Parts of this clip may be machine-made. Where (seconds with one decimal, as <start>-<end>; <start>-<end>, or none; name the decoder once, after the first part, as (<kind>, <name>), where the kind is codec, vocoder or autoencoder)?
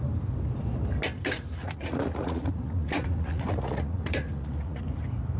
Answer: 1.6-4.8 (vocoder, Vocos)